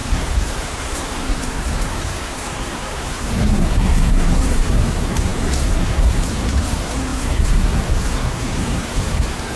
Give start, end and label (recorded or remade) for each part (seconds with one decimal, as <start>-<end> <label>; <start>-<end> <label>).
0.0-9.6 remade